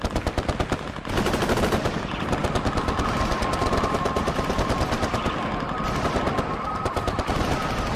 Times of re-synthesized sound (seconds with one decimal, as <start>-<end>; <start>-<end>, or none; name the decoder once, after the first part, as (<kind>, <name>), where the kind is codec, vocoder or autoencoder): none